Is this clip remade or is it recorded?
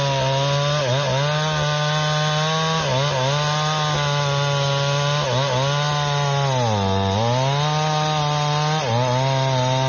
recorded